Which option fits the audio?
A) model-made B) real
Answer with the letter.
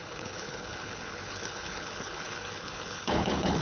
A